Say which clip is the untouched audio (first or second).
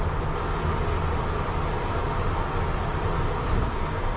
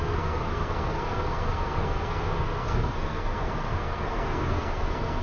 first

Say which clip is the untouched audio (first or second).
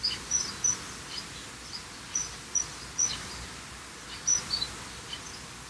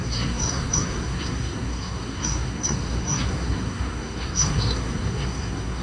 first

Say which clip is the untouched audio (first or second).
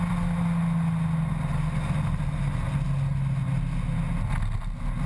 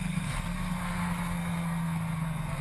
first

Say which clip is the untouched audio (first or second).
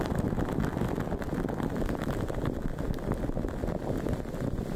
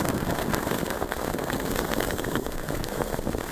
first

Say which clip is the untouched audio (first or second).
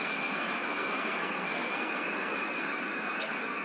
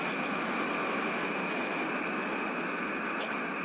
second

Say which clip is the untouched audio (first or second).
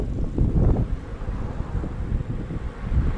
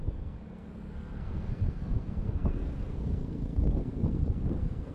first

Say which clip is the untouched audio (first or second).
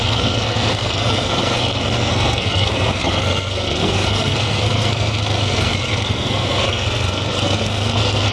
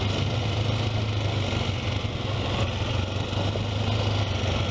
second